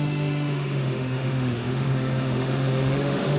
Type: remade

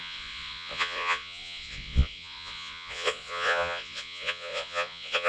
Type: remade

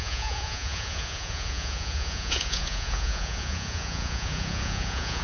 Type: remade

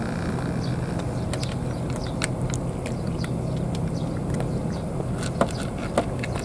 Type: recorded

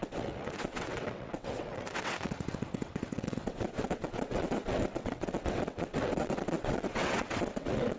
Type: remade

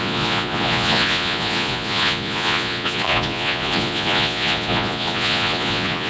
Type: remade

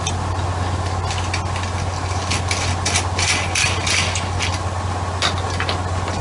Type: recorded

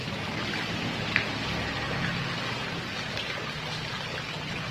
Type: recorded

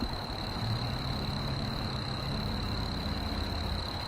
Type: remade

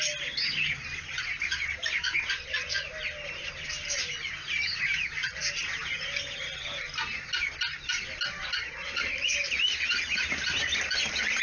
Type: recorded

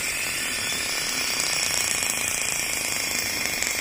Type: remade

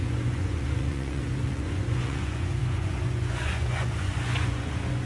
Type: remade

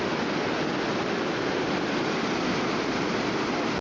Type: recorded